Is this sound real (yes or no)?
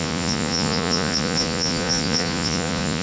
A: no